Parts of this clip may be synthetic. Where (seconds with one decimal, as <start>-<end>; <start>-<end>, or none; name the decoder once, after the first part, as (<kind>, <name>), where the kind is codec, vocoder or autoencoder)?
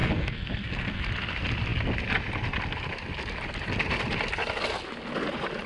0.0-1.1 (codec, SNAC)